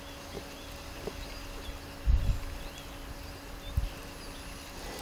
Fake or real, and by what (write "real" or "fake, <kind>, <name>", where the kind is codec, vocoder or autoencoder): real